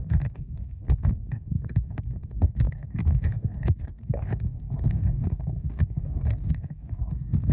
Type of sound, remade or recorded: remade